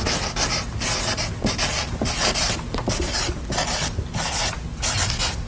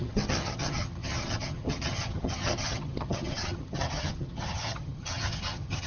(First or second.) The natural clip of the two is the first